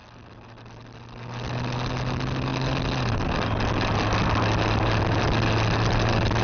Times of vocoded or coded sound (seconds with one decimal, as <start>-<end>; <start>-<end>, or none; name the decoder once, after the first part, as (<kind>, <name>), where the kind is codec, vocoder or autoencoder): none